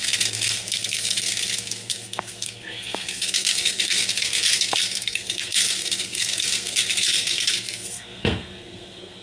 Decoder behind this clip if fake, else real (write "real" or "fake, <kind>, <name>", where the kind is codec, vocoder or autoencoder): fake, codec, SNAC